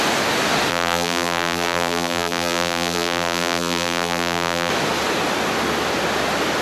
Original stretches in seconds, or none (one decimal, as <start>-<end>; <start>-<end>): 0.0-0.7; 4.7-6.6